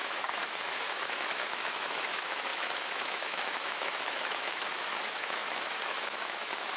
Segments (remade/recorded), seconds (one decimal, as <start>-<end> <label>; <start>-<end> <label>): 0.0-6.8 remade